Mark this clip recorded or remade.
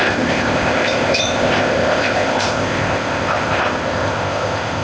remade